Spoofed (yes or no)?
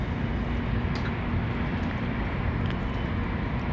no